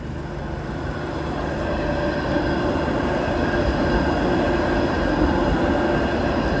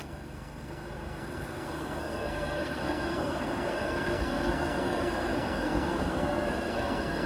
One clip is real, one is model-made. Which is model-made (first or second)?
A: second